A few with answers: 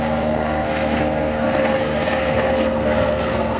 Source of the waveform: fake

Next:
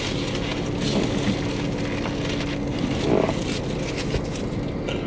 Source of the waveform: real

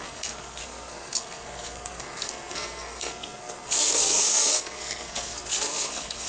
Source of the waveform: fake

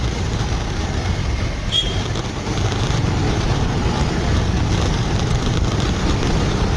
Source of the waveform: fake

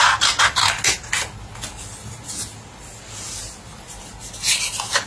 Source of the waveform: real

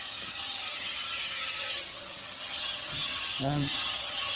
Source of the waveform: fake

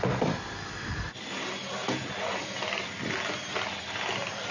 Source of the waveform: real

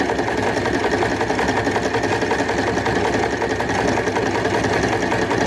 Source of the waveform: real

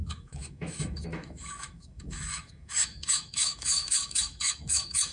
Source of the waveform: fake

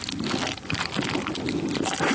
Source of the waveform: real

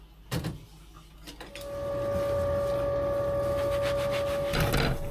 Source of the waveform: real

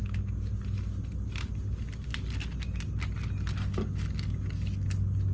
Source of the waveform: real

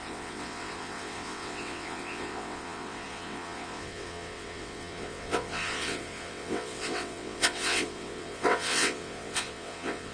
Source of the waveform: fake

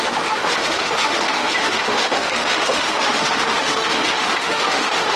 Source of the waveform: fake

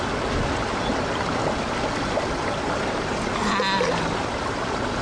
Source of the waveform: real